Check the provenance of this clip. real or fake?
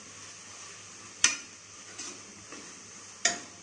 real